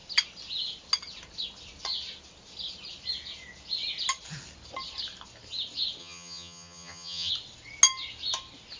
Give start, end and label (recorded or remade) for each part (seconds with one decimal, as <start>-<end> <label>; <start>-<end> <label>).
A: 0.0-6.0 recorded; 6.0-7.3 remade; 7.3-8.8 recorded